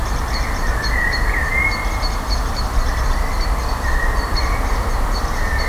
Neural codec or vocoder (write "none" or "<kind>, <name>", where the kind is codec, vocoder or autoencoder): none